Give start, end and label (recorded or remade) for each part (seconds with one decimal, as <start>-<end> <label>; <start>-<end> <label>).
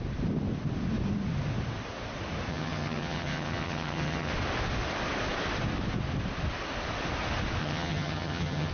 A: 0.0-2.5 recorded; 2.5-4.3 remade; 4.3-7.6 recorded; 7.6-8.7 remade